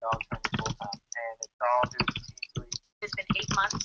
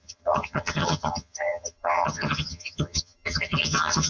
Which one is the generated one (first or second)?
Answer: second